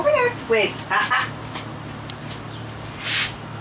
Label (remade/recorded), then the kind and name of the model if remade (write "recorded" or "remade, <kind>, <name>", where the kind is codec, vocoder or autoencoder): recorded